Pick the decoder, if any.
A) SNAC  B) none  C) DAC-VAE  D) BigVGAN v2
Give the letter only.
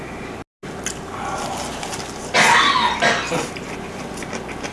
B